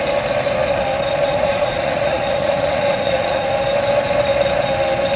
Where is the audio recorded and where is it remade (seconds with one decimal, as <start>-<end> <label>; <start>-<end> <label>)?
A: 0.0-1.3 recorded; 1.3-3.5 remade; 3.5-5.2 recorded